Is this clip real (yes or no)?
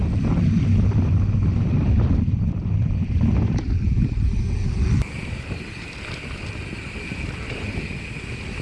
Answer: no